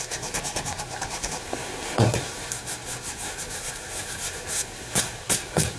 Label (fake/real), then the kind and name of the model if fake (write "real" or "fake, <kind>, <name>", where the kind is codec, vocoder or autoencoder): fake, codec, SNAC